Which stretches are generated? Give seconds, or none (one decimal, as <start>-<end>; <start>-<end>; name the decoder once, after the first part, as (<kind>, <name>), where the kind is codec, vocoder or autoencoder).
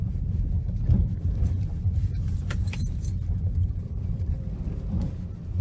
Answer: 0.0-0.5 (vocoder, BigVGAN v2); 1.0-4.4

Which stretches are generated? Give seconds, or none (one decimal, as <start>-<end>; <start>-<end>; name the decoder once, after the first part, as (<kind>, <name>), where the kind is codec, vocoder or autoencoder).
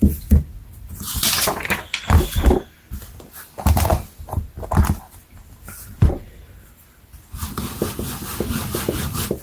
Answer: none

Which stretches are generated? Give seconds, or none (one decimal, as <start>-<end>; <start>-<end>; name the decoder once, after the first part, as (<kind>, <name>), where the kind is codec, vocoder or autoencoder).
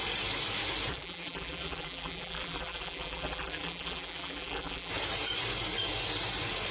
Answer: 0.9-4.9 (vocoder, BigVGAN v2)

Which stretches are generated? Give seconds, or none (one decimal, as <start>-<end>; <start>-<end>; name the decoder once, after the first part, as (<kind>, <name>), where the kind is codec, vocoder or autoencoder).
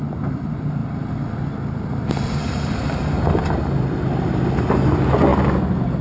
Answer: 0.0-0.8 (vocoder, BigVGAN v2); 2.3-5.3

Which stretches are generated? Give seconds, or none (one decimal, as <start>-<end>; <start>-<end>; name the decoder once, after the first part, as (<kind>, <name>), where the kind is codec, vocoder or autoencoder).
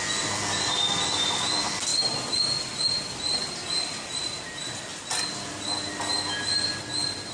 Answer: none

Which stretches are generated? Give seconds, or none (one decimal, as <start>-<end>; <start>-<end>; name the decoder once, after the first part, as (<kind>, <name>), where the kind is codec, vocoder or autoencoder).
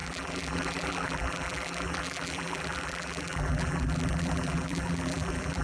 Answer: 0.0-5.6 (vocoder, BigVGAN v2)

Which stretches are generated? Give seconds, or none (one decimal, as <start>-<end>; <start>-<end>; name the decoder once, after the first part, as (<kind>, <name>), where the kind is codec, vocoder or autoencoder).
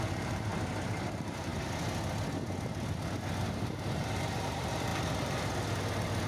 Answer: 0.0-0.5 (vocoder, BigVGAN v2); 1.1-1.5; 3.4-4.9